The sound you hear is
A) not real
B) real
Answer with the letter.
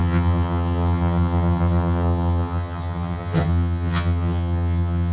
A